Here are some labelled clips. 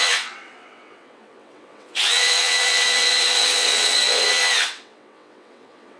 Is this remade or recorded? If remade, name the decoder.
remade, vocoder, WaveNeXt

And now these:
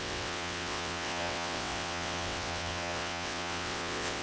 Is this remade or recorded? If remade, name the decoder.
remade, vocoder, WaveNeXt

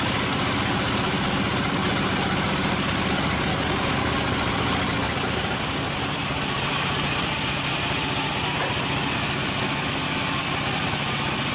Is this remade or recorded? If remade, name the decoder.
recorded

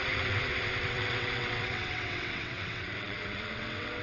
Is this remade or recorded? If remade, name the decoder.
remade, vocoder, WaveNeXt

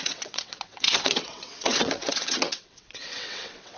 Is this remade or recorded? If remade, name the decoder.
remade, vocoder, WaveNeXt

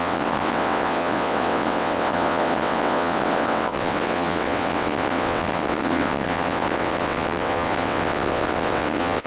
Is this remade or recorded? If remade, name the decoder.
remade, vocoder, WaveNeXt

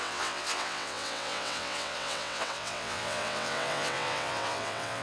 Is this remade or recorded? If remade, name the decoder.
remade, vocoder, WaveNeXt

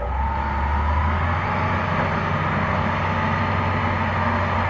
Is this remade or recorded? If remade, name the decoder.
recorded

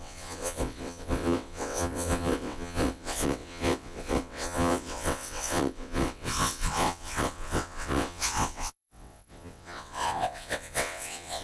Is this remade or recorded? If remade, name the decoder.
remade, vocoder, WaveNeXt